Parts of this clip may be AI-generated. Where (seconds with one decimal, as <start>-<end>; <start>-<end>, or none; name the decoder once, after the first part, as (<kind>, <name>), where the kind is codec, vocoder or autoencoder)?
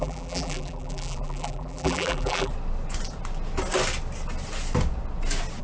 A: 0.0-2.5 (vocoder, BigVGAN v2)